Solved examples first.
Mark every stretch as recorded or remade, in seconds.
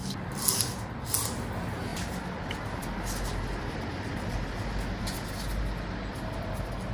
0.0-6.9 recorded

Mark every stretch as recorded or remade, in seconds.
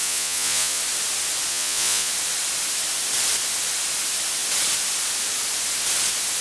0.0-0.8 remade; 0.8-1.5 recorded; 1.5-2.1 remade; 2.1-6.4 recorded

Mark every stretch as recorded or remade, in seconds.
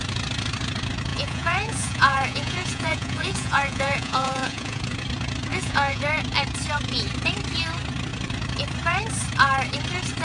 0.0-1.1 recorded; 1.1-4.8 remade; 4.8-5.5 recorded; 5.5-6.0 remade; 6.0-10.2 recorded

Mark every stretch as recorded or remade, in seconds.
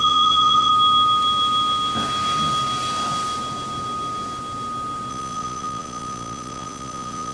0.0-0.7 remade; 0.7-5.1 recorded; 5.1-7.3 remade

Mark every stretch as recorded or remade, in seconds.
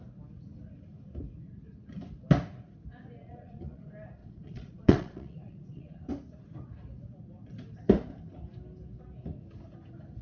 0.0-3.2 recorded; 3.2-3.8 remade; 3.8-4.2 recorded; 4.2-6.1 remade; 6.1-10.2 recorded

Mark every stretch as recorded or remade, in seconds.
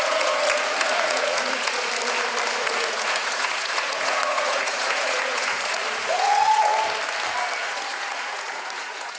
0.0-1.9 remade; 1.9-2.6 recorded; 2.6-6.7 remade; 6.7-7.6 recorded; 7.6-9.2 remade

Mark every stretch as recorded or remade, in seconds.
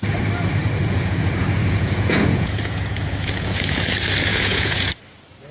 0.0-0.6 recorded; 0.6-3.8 remade; 3.8-4.3 recorded; 4.3-4.9 remade; 4.9-5.5 recorded